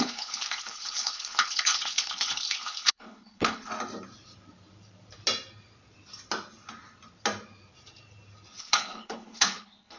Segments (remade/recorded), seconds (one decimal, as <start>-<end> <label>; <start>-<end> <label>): 0.0-3.7 remade; 3.7-8.6 recorded; 8.6-10.0 remade